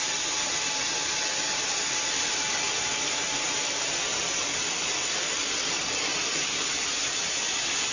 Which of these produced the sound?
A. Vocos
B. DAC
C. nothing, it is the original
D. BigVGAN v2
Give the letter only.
C